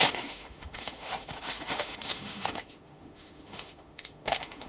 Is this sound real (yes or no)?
no